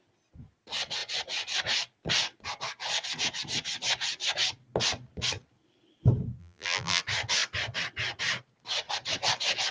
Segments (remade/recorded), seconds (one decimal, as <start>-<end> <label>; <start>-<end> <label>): 0.0-6.4 recorded; 6.4-7.0 remade; 7.0-9.7 recorded